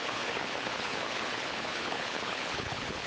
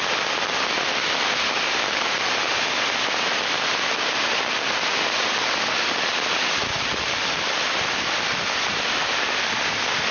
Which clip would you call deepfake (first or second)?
first